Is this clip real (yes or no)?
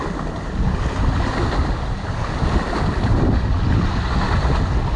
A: yes